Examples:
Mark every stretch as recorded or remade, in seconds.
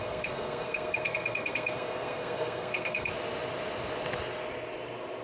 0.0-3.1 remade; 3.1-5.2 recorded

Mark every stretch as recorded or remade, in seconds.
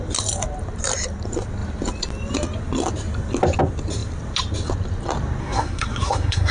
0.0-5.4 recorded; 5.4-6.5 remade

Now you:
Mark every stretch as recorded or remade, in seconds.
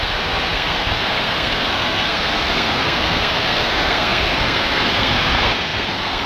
0.0-6.3 remade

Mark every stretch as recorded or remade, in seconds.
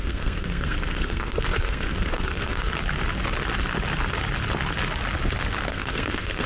0.0-2.7 remade; 2.7-5.7 recorded; 5.7-6.5 remade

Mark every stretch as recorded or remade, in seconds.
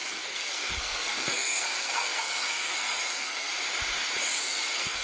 0.0-3.5 remade; 3.5-4.4 recorded; 4.4-5.0 remade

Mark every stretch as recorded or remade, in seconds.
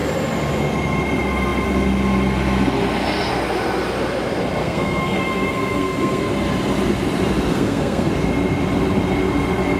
0.0-4.6 recorded; 4.6-6.2 remade; 6.2-7.5 recorded; 7.5-8.1 remade; 8.1-9.8 recorded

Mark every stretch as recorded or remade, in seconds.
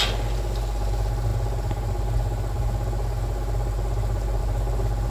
0.0-5.1 recorded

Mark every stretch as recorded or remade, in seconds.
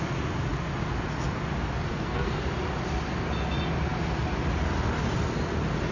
0.0-1.9 recorded; 1.9-2.4 remade; 2.4-5.9 recorded